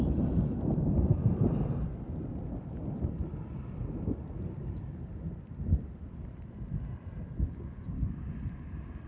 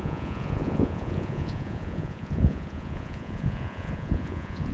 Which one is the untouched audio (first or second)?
first